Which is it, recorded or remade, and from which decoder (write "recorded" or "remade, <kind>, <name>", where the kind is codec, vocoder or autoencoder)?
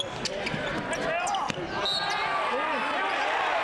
recorded